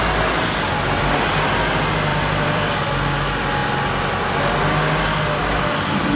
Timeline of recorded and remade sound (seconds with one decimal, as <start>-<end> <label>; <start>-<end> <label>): 0.0-2.1 recorded; 2.1-2.9 remade; 2.9-6.2 recorded

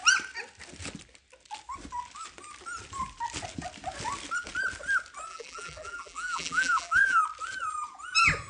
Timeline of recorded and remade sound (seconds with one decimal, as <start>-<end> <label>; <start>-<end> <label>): 0.0-5.3 recorded; 5.3-7.2 remade; 7.2-8.5 recorded

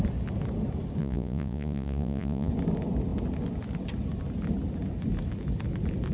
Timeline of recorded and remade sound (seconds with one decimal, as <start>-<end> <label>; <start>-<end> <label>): 0.0-1.0 recorded; 1.0-2.5 remade; 2.5-6.1 recorded